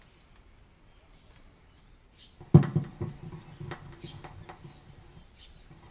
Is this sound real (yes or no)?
yes